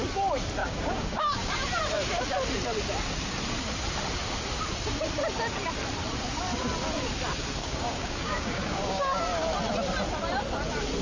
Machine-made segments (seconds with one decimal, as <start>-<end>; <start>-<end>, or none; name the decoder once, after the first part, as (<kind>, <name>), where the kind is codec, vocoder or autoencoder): 0.6-1.6 (codec, DAC); 7.6-9.2